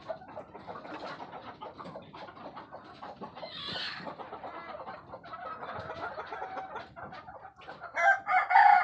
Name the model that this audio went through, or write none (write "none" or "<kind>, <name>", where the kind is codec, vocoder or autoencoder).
none